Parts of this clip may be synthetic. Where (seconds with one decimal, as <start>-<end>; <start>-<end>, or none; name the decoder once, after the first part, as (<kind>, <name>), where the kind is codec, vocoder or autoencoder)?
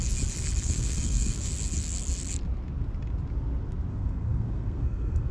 0.6-1.5 (codec, SNAC); 3.9-5.3